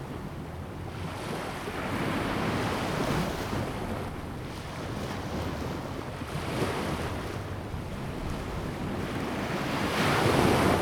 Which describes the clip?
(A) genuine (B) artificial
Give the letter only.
A